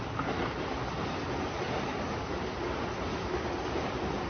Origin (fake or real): real